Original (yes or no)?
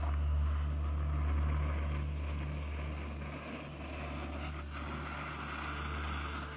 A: yes